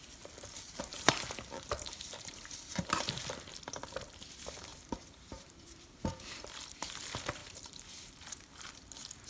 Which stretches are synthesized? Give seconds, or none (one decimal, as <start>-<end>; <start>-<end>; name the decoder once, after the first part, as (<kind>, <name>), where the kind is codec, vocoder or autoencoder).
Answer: 0.9-3.2 (vocoder, BigVGAN v2); 4.7-6.9; 7.4-8.7